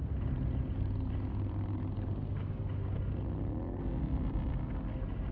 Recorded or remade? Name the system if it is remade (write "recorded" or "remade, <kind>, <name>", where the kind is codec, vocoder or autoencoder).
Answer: recorded